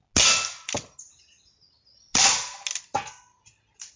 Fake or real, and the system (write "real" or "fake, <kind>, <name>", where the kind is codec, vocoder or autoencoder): real